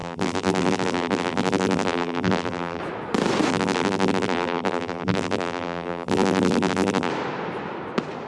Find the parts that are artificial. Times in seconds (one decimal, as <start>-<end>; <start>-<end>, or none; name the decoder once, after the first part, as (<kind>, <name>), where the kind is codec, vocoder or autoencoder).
0.0-2.8 (vocoder, BigVGAN v2); 3.5-7.1